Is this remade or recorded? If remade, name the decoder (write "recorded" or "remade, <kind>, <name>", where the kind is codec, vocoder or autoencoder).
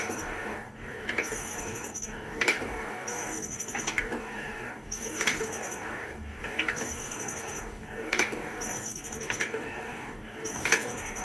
remade, codec, DAC